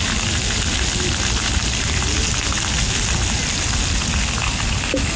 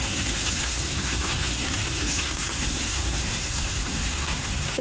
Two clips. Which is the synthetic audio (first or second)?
second